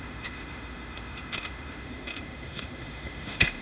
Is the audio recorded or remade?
remade